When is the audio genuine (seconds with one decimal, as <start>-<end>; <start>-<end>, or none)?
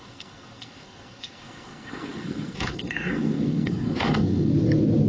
4.5-5.1